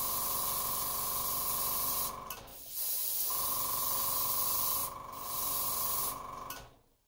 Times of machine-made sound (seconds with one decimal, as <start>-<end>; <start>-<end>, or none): 2.5-3.8; 4.8-6.0